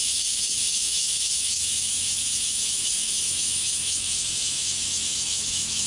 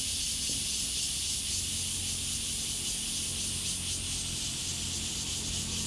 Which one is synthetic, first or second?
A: first